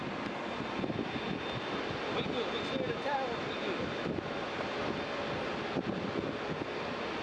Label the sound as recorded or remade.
recorded